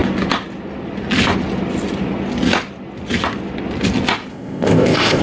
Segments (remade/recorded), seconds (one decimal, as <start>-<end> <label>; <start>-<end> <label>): 0.0-4.3 recorded; 4.3-5.2 remade